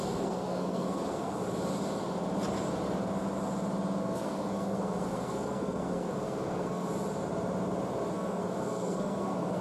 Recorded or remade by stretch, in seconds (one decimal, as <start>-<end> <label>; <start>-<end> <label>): 0.0-1.4 remade; 1.4-4.0 recorded; 4.0-6.9 remade; 6.9-8.1 recorded; 8.1-9.6 remade